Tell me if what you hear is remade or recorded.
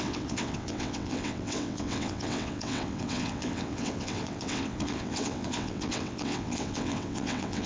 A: remade